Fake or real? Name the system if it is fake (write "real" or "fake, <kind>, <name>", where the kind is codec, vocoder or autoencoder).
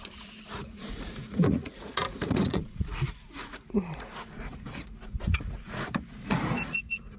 fake, vocoder, Vocos